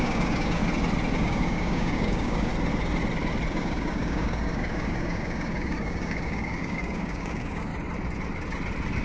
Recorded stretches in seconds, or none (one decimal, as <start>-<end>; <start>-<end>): 0.6-1.2; 2.5-3.5; 7.7-9.0